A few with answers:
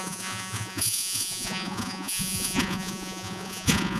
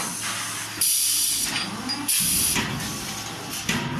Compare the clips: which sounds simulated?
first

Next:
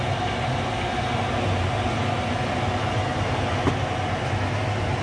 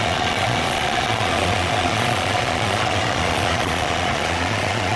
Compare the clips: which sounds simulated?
second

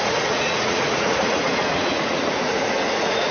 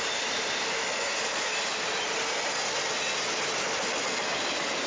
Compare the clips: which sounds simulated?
first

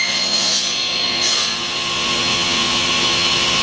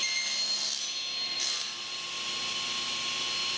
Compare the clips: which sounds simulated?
first